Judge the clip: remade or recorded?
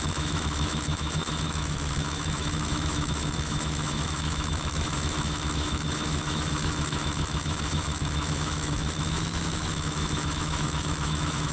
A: remade